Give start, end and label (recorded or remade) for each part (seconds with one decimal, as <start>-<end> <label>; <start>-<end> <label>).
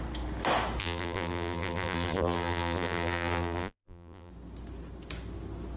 0.0-0.8 recorded; 0.8-4.3 remade; 4.3-5.8 recorded